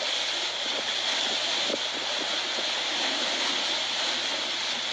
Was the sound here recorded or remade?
recorded